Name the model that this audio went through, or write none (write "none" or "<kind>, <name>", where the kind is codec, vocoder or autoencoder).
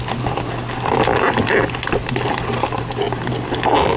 none